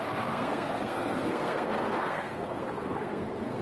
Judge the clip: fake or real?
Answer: fake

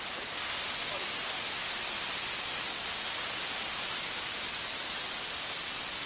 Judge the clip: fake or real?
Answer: real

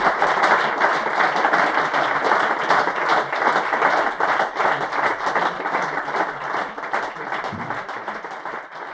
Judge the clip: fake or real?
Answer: real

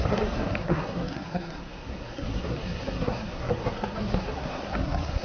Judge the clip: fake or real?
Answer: fake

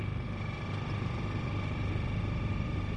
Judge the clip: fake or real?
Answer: real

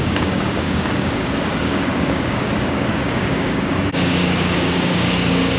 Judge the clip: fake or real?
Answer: fake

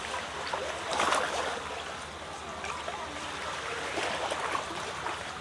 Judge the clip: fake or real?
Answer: fake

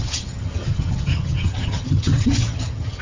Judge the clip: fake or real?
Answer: fake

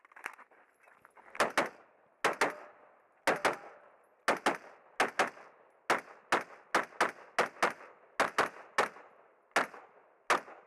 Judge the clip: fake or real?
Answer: real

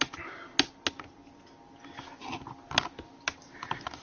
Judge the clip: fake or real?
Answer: real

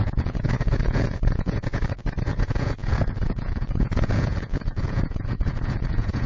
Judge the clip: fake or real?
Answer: fake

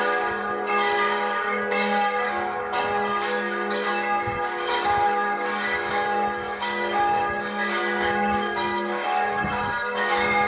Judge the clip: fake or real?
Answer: fake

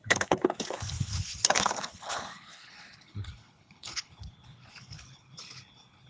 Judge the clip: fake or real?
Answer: fake